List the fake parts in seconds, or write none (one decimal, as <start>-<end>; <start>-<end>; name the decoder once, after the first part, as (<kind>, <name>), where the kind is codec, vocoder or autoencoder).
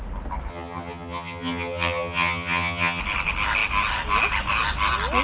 0.5-3.0 (vocoder, HiFi-GAN)